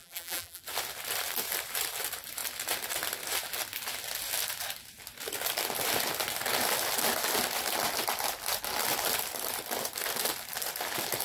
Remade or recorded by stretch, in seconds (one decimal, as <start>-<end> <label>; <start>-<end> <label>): 0.0-0.6 remade; 0.6-11.2 recorded